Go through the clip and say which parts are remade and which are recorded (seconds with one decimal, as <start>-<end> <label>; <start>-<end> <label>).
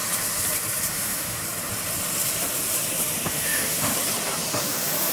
0.0-0.9 recorded; 0.9-1.4 remade; 1.4-3.3 recorded; 3.3-3.9 remade; 3.9-4.6 recorded; 4.6-5.1 remade